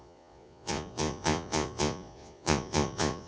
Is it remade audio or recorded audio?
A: remade